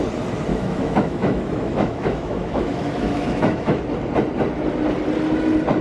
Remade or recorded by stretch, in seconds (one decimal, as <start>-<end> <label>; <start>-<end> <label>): 0.0-0.5 recorded; 0.5-3.8 remade; 3.8-5.8 recorded